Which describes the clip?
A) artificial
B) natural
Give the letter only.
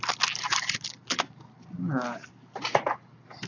B